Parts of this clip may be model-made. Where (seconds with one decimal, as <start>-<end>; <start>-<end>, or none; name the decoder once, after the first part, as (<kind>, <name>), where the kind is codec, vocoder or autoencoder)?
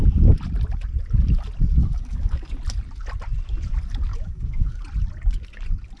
1.8-2.5 (codec, DAC); 4.1-4.8